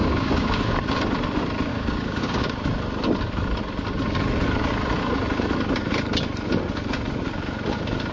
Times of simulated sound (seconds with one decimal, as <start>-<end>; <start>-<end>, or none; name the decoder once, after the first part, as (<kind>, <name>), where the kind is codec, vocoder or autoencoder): 0.0-0.6 (codec, DAC); 1.7-2.5